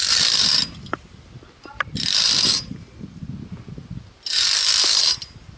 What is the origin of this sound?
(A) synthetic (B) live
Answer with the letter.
B